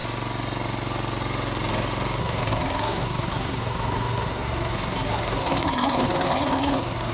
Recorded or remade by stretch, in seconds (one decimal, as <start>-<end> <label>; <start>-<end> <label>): 0.0-2.2 recorded; 2.2-7.1 remade